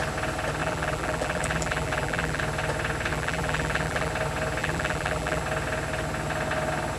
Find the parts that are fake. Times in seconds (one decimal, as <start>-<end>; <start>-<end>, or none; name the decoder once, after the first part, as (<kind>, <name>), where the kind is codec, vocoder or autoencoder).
0.6-2.4 (vocoder, BigVGAN v2); 3.1-4.1; 4.6-5.4

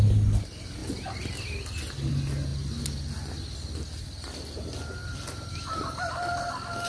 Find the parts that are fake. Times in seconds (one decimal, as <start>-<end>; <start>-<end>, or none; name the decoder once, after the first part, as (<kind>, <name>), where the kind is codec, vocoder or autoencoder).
none

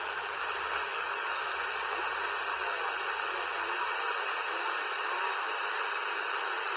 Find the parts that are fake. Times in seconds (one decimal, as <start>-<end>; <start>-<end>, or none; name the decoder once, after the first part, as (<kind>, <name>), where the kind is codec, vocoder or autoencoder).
0.9-1.4 (codec, DAC)

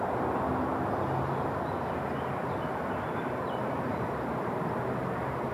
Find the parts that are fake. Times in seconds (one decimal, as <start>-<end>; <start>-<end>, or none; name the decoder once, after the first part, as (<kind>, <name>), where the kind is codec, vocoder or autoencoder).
none